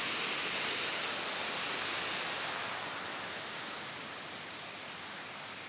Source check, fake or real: real